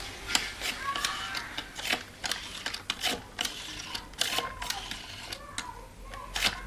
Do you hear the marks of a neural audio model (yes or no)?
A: no